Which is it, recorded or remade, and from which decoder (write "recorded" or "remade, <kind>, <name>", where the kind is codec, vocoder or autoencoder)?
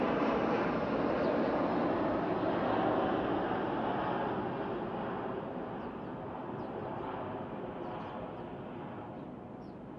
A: recorded